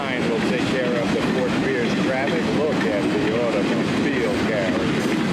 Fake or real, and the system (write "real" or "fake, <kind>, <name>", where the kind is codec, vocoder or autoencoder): real